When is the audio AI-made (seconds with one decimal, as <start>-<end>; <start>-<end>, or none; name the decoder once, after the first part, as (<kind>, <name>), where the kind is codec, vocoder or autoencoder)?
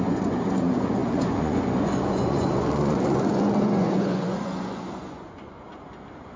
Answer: 0.0-6.4 (vocoder, Vocos)